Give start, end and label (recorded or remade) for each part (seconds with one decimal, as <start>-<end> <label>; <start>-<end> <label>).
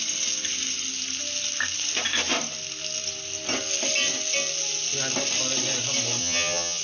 0.0-6.2 recorded; 6.2-6.8 remade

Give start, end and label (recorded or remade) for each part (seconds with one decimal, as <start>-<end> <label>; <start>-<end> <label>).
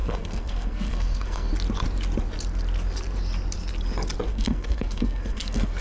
0.0-1.5 remade; 1.5-4.3 recorded; 4.3-5.8 remade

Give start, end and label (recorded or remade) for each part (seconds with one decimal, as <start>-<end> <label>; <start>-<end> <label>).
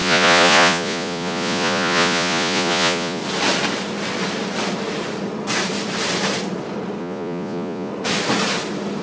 0.0-3.2 remade; 3.2-7.0 recorded; 7.0-7.9 remade; 7.9-9.0 recorded